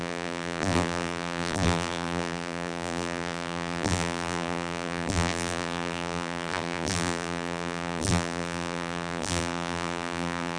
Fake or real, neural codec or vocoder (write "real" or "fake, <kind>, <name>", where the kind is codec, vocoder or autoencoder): fake, vocoder, BigVGAN v2